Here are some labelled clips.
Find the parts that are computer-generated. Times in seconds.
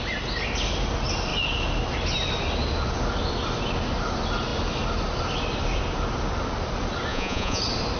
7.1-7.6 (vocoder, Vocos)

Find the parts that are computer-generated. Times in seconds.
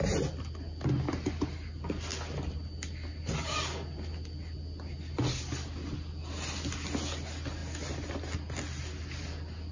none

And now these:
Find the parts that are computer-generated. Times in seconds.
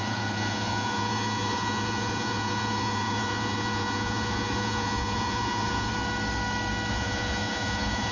0.0-5.9 (vocoder, Vocos); 6.9-8.1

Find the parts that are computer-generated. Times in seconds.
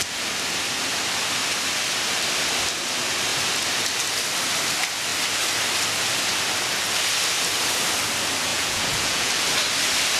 8.5-9.3 (vocoder, Vocos)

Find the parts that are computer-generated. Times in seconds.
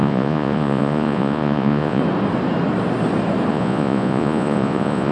0.0-2.0 (vocoder, Vocos); 3.5-5.1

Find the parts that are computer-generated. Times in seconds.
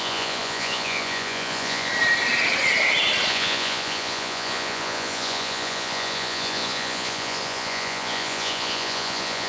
0.0-1.9 (vocoder, Vocos); 3.3-9.5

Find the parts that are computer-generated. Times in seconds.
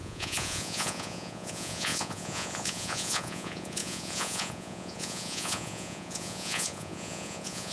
0.0-7.7 (vocoder, Vocos)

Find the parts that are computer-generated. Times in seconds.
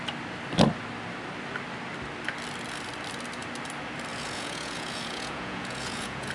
4.1-6.3 (vocoder, Vocos)